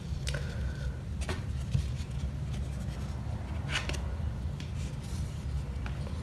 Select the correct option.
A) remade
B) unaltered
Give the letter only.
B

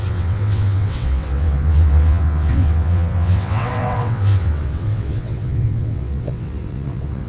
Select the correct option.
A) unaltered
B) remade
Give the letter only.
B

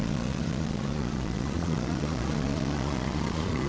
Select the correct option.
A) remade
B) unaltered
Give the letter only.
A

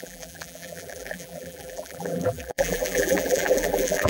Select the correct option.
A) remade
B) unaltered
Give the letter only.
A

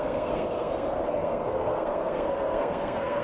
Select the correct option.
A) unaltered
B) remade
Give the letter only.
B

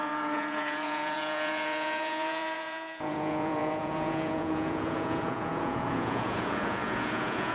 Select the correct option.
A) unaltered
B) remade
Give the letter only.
B